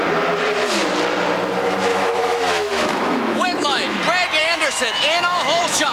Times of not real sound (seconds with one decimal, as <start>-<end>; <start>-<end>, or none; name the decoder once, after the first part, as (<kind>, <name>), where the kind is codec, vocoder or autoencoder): 1.9-4.0 (autoencoder, DAC-VAE); 4.4-5.9